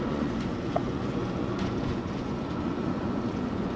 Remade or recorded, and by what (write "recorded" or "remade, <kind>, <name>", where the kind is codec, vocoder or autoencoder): remade, vocoder, Vocos